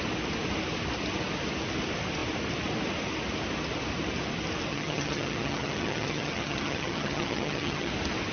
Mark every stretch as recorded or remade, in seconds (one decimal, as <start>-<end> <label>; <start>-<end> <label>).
0.0-4.7 recorded; 4.7-7.9 remade; 7.9-8.3 recorded